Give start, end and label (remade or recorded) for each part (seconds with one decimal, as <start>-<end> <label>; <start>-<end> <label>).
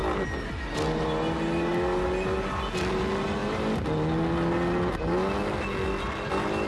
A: 0.0-2.8 recorded; 2.8-3.4 remade; 3.4-6.3 recorded; 6.3-6.7 remade